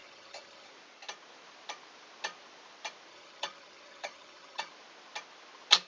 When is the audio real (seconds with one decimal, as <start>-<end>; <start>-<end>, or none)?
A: 0.7-3.1; 4.7-5.9

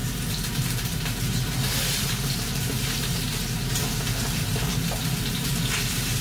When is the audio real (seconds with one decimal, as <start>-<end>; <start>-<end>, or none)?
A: none

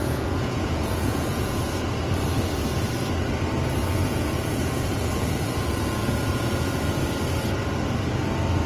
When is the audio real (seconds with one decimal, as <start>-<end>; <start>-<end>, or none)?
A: 1.6-3.8; 6.8-8.7

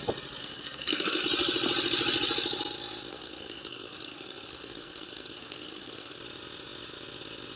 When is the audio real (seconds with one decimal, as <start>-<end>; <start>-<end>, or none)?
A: 0.0-0.4; 1.2-3.1; 6.2-7.6

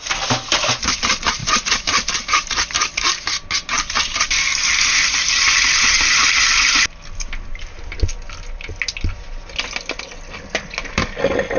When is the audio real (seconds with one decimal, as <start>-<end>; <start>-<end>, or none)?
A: 0.0-1.4; 2.6-3.6; 4.2-11.6